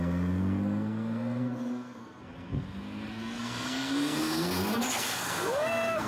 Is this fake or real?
fake